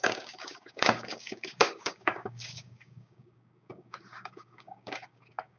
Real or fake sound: fake